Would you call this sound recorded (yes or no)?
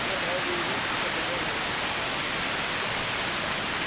yes